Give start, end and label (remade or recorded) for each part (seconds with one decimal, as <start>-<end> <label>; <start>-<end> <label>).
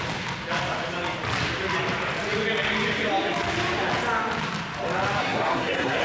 0.0-5.2 recorded; 5.2-6.0 remade